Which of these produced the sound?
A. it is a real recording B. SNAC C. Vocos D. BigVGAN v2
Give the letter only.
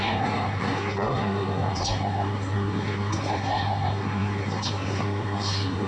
B